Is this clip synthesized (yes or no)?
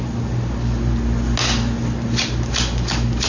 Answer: no